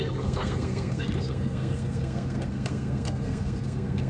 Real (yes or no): no